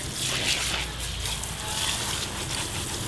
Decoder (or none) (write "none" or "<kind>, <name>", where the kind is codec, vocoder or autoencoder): none